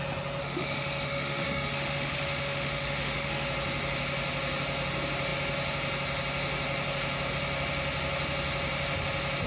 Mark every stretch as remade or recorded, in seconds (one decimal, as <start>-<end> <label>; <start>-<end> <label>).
0.0-0.4 recorded; 0.4-3.5 remade; 3.5-9.5 recorded